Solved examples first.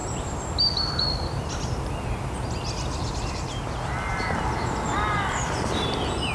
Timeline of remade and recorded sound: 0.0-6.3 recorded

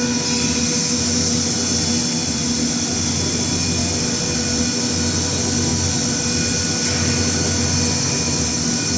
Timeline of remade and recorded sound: 0.0-9.0 recorded

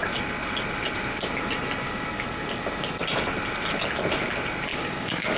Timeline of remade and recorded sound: 0.0-4.7 recorded; 4.7-5.4 remade